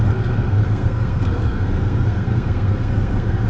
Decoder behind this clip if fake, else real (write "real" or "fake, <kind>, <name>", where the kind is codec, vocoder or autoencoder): fake, codec, SNAC